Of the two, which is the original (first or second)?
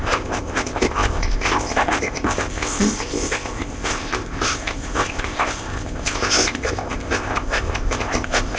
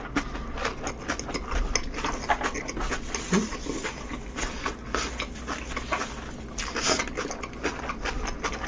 second